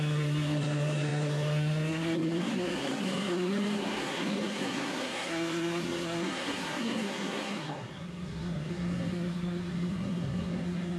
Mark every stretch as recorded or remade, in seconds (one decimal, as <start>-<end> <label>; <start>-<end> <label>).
0.0-11.0 remade